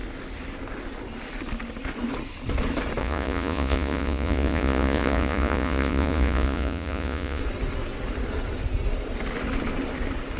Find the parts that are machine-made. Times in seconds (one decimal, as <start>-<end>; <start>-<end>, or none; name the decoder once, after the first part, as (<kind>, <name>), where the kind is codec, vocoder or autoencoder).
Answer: 3.0-7.4 (vocoder, Vocos)